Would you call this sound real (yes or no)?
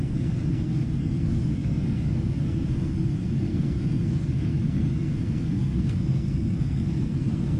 no